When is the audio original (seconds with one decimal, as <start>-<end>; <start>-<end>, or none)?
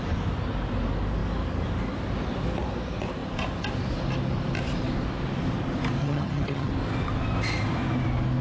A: 0.0-6.0; 6.7-8.4